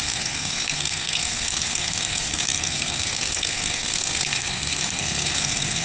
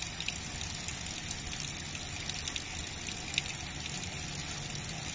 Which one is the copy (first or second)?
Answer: first